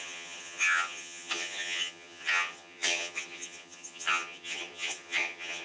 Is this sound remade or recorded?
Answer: remade